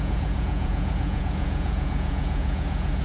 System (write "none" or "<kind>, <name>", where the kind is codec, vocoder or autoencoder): vocoder, Vocos